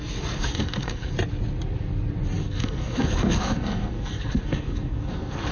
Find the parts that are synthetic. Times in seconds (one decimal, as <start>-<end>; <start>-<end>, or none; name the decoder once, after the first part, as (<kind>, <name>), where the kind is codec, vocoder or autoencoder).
0.4-1.1 (codec, SNAC); 2.4-5.5